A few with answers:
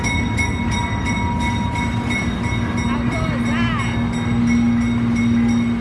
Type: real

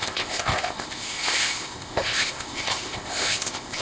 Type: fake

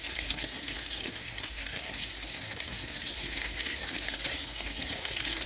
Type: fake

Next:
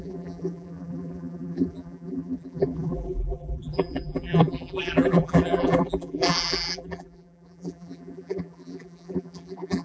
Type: fake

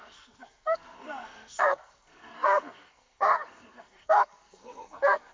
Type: fake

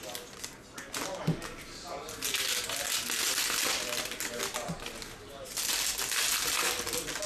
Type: real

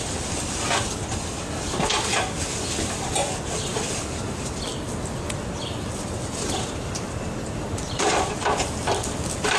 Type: real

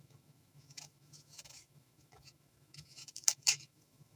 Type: fake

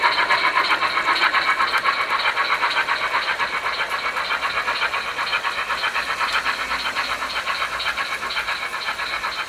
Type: real